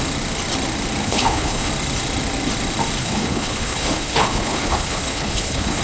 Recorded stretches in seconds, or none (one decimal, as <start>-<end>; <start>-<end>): 0.0-1.0; 1.7-3.0